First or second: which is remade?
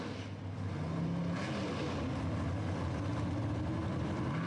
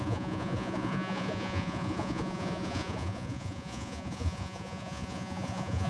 second